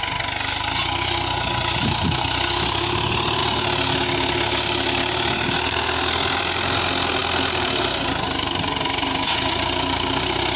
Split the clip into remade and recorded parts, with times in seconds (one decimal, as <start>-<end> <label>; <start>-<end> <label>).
0.0-10.6 recorded